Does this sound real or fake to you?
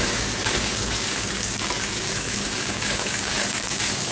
fake